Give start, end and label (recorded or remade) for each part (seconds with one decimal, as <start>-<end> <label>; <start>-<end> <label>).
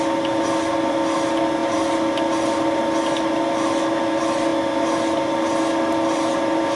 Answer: 0.0-6.8 recorded